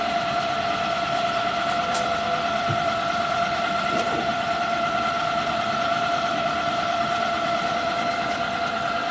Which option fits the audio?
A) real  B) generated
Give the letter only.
B